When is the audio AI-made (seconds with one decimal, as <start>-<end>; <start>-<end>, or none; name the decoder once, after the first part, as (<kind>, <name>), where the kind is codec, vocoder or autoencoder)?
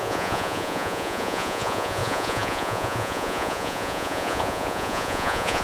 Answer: 0.0-5.6 (vocoder, Vocos)